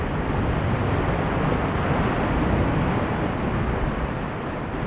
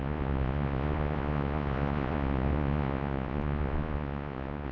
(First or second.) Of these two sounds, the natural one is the first